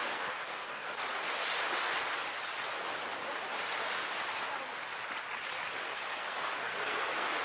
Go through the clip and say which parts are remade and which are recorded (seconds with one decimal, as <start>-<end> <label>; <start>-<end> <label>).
0.0-1.1 remade; 1.1-5.9 recorded; 5.9-7.4 remade